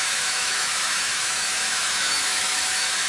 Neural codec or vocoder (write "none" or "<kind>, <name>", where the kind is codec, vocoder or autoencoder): autoencoder, DAC-VAE